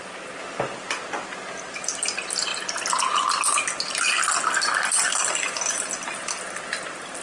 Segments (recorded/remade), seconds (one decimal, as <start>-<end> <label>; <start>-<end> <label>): 0.0-7.2 recorded